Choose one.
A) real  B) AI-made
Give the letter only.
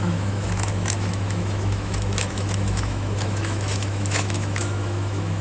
B